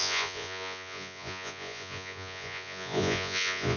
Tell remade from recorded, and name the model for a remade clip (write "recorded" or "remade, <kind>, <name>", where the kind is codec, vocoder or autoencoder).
remade, vocoder, Vocos